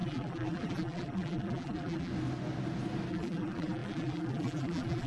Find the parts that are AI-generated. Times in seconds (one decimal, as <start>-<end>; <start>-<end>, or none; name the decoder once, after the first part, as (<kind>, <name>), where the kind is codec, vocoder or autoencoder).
0.0-2.1 (vocoder, BigVGAN v2); 3.1-5.1